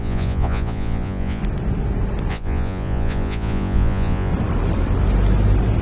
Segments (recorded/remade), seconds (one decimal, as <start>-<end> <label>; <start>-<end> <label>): 0.0-1.4 remade; 1.4-2.3 recorded; 2.3-4.3 remade; 4.3-5.8 recorded